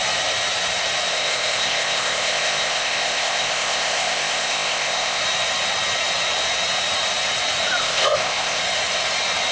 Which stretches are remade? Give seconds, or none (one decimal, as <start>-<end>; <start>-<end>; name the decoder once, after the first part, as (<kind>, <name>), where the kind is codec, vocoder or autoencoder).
1.1-5.2 (codec, ZipCodec); 7.8-8.6